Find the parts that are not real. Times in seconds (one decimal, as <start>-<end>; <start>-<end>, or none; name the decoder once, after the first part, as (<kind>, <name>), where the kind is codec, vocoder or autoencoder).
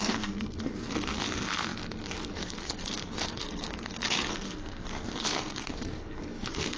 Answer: 0.0-6.8 (codec, SNAC)